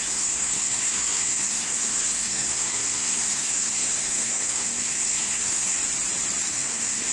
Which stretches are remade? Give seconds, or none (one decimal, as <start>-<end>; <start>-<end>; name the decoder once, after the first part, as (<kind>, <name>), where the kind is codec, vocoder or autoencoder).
0.0-5.8 (codec, SNAC); 6.5-7.1